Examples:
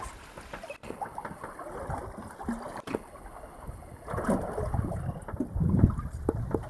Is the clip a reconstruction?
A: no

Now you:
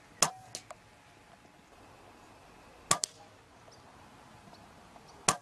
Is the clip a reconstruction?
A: no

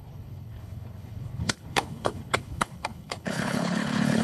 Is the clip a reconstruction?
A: yes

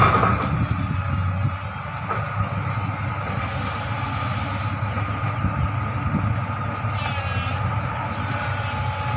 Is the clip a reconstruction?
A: no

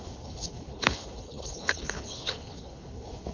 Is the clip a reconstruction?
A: yes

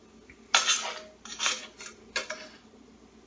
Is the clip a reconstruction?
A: no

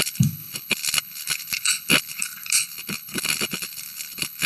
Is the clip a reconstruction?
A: yes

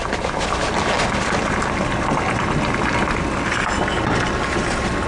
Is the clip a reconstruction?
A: no